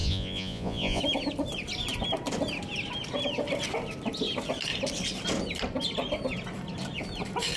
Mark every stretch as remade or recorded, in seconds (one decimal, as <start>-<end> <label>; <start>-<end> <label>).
0.0-1.0 remade; 1.0-7.6 recorded